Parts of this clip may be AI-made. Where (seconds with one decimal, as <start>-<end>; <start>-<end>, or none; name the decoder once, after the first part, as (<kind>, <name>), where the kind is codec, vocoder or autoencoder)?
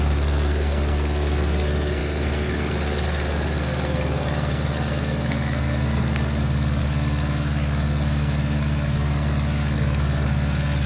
0.0-10.9 (codec, SNAC)